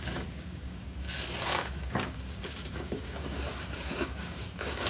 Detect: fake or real fake